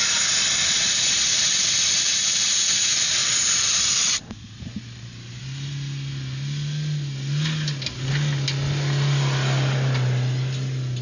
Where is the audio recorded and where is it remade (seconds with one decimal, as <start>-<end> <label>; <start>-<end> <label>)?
0.0-3.2 recorded; 3.2-5.4 remade; 5.4-11.0 recorded